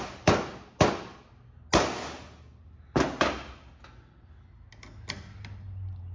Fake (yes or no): no